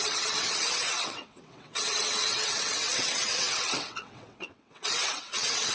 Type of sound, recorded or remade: remade